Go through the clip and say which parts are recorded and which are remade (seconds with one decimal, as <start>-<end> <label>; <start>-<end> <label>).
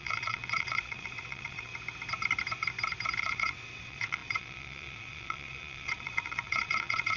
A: 0.0-1.7 remade; 1.7-3.2 recorded; 3.2-7.2 remade